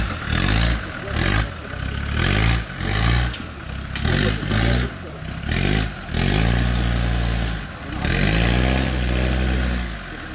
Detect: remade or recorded recorded